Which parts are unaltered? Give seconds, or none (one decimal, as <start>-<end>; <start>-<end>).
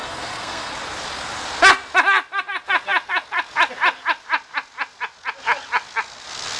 0.7-6.6